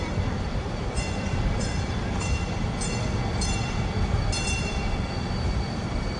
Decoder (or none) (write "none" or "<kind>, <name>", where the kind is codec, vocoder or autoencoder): vocoder, BigVGAN v2